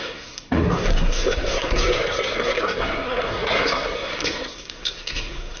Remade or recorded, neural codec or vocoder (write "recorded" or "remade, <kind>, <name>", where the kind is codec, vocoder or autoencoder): remade, codec, SNAC